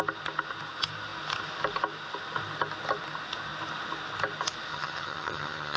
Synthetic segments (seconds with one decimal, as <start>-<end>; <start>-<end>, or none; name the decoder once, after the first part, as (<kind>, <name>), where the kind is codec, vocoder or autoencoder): 4.7-5.8 (vocoder, HiFi-GAN)

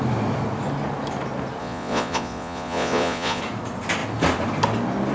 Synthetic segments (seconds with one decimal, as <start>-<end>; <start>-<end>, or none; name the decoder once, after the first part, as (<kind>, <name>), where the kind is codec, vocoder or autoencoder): 1.6-3.4 (vocoder, Vocos)

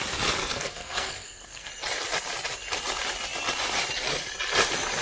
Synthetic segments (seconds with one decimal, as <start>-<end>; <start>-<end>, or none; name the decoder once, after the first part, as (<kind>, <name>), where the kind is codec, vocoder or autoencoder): 0.4-1.7 (codec, SNAC)